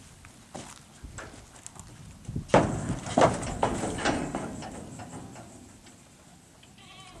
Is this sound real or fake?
real